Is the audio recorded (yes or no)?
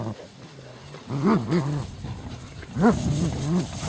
yes